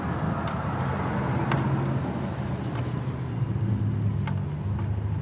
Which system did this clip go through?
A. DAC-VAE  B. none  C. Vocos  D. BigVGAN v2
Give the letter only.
B